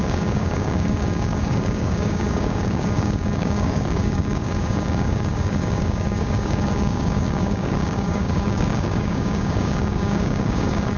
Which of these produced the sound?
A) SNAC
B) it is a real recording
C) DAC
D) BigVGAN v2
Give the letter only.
C